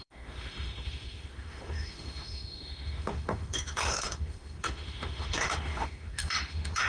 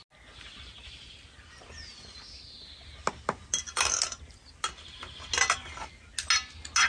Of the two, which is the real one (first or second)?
second